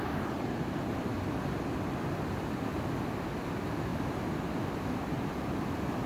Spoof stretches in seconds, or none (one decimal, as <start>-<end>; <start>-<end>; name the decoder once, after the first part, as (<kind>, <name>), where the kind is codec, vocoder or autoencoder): 0.0-1.1 (vocoder, BigVGAN v2); 2.1-2.7; 3.5-3.9